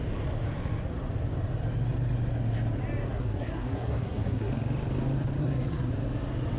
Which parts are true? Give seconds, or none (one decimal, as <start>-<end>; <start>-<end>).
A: 0.0-3.1; 4.5-5.4; 5.9-6.6